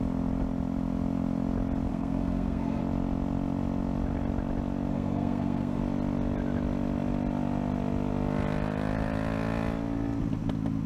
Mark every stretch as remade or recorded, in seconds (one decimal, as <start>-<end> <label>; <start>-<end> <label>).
0.0-1.9 recorded; 1.9-2.8 remade; 2.8-4.9 recorded; 4.9-5.8 remade; 5.8-10.9 recorded